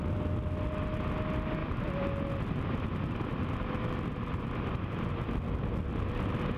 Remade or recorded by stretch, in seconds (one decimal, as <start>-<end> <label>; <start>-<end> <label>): 0.0-6.6 recorded